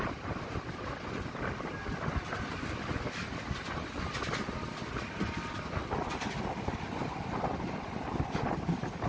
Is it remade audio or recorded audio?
recorded